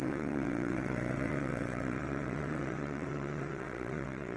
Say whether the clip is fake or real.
fake